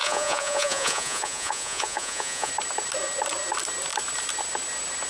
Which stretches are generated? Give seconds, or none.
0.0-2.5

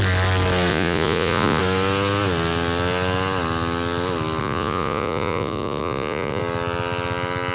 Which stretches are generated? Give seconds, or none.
0.7-1.6; 4.4-6.4

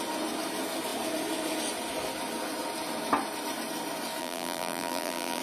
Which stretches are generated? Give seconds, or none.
4.2-5.4

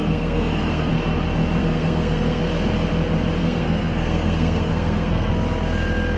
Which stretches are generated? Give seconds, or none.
0.0-0.9; 1.6-2.4; 3.4-5.3

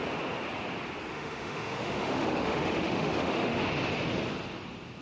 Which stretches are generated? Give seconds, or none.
1.1-3.6